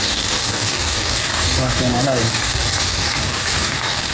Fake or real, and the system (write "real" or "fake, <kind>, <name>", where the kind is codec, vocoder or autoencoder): fake, codec, DAC